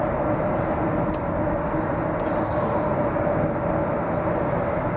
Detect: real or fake real